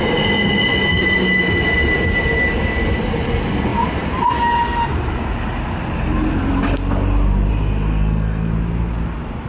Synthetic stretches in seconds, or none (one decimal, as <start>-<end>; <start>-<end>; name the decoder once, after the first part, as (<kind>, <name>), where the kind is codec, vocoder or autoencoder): 7.9-8.5 (codec, SNAC)